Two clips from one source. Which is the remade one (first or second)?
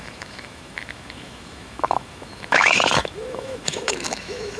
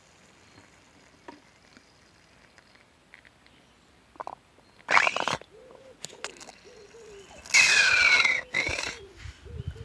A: first